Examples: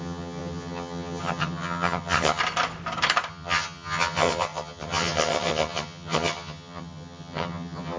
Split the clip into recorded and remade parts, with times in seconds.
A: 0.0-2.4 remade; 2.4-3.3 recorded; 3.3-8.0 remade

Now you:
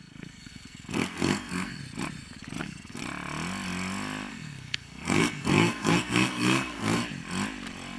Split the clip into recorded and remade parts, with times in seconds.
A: 0.0-1.8 remade; 1.8-2.6 recorded; 2.6-3.0 remade; 3.0-4.3 recorded; 4.3-7.0 remade; 7.0-8.0 recorded

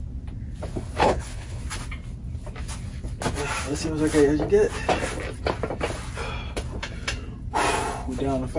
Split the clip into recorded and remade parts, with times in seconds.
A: 0.0-1.0 recorded; 1.0-1.6 remade; 1.6-8.6 recorded

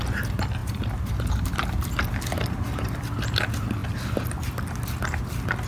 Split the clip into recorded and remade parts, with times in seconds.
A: 0.0-0.6 recorded; 0.6-3.0 remade; 3.0-5.7 recorded